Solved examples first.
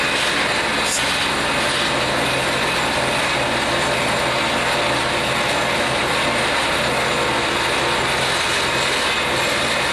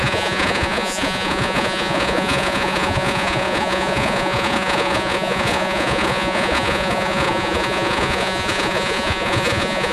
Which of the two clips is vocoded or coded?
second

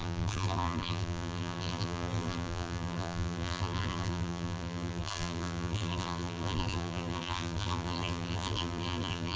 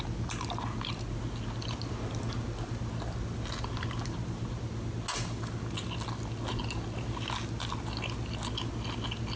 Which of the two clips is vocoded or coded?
first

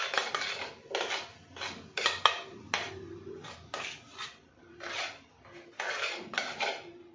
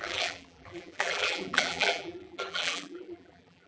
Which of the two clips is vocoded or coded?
second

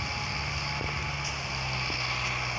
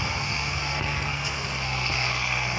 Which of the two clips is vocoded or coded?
second